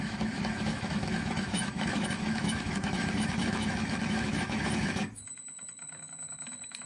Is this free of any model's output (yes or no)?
no